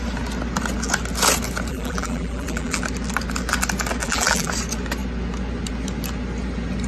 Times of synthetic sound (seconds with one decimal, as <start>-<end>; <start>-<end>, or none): 1.7-2.8; 4.0-4.5